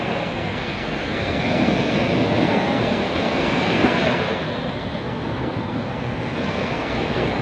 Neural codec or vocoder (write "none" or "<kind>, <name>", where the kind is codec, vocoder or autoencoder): codec, SNAC